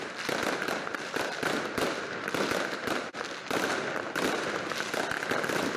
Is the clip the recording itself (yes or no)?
no